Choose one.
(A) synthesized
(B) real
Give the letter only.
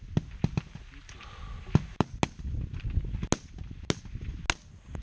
B